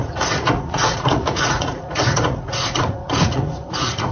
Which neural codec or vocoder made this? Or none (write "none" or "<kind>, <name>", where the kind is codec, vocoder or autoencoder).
vocoder, Vocos